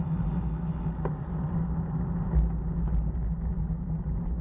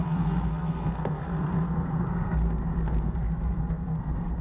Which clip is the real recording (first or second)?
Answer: first